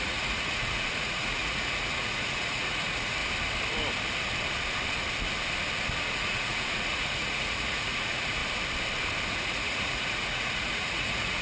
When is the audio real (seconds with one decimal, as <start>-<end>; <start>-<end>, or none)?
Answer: 3.2-6.0; 8.4-9.3